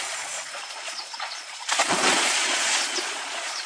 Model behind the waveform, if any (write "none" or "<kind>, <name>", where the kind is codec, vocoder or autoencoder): vocoder, Vocos